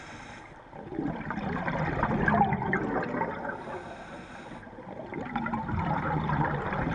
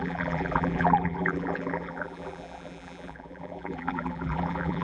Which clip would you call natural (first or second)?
first